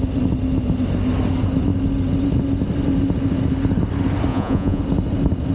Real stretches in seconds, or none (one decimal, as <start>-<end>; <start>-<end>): 0.0-4.3; 4.8-5.5

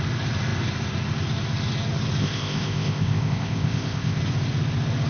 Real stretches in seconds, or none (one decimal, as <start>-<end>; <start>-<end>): 0.0-2.2; 4.2-5.1

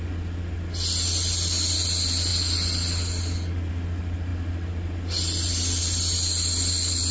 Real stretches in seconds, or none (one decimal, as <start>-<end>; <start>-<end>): 0.0-7.1

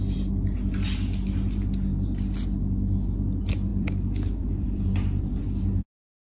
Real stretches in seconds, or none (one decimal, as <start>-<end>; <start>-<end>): 0.0-3.7; 5.4-6.2

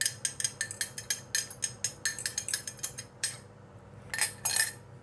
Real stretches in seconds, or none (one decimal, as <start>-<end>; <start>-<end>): 0.0-2.3; 4.0-5.0

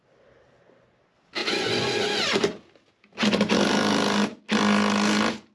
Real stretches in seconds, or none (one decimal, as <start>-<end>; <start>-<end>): 0.0-1.4; 2.3-5.5

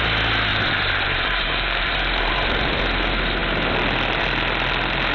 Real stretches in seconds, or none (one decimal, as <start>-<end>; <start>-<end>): 0.0-0.5; 2.8-5.1

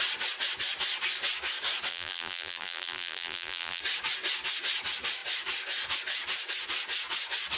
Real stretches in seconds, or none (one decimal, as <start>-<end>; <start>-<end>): 0.0-1.9; 3.8-7.6